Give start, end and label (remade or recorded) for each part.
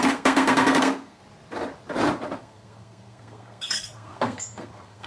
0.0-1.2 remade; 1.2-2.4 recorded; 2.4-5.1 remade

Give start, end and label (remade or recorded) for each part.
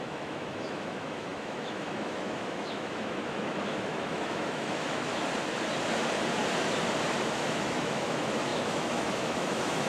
0.0-5.1 remade; 5.1-7.4 recorded; 7.4-9.9 remade